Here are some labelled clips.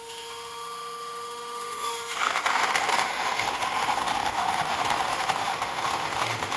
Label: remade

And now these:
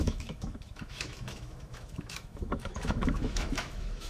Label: remade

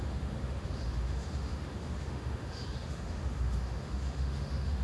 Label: remade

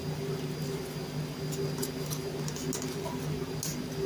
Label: recorded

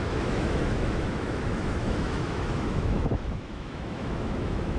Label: remade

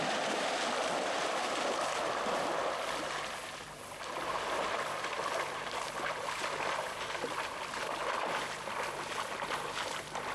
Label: recorded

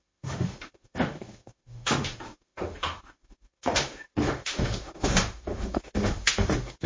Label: remade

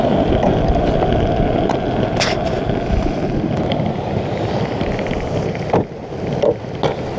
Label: recorded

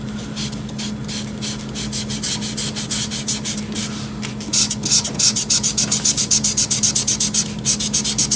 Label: recorded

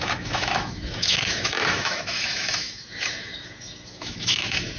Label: remade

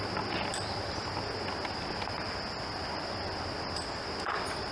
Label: recorded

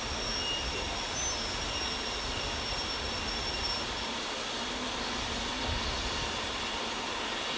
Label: recorded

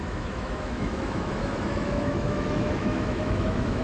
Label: remade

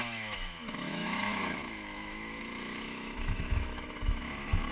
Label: remade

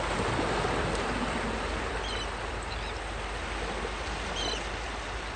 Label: recorded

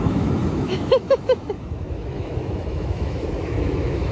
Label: remade